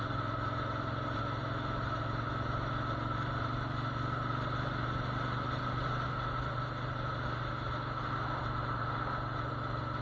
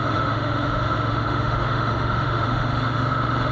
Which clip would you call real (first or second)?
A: first